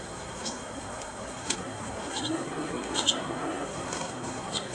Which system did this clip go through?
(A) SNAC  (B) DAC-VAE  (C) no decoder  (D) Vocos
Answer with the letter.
A